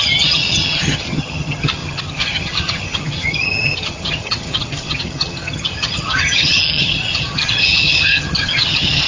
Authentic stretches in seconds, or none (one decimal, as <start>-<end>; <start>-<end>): none